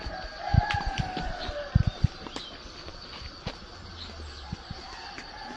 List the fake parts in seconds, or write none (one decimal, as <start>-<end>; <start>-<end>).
none

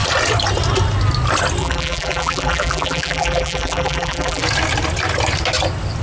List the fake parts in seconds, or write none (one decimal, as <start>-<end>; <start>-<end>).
1.6-4.4

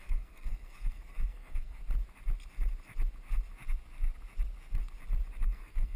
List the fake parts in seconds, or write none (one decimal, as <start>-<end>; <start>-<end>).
0.0-1.8; 5.4-6.0